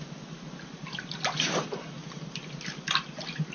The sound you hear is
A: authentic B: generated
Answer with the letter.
A